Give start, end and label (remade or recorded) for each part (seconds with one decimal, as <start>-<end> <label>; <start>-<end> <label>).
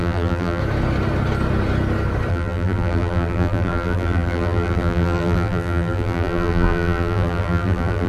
0.0-0.6 remade; 0.6-2.3 recorded; 2.3-8.1 remade